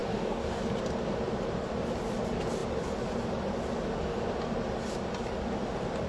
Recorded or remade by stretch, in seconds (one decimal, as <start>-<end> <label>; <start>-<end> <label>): 0.0-0.6 remade; 0.6-6.1 recorded